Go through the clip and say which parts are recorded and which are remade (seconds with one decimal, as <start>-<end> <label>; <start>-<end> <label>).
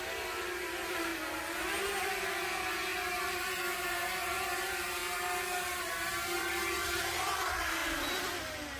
0.0-1.1 remade; 1.1-2.0 recorded; 2.0-5.0 remade; 5.0-5.6 recorded; 5.6-7.8 remade; 7.8-8.4 recorded; 8.4-8.8 remade